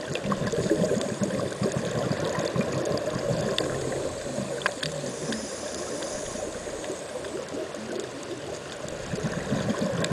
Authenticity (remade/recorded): recorded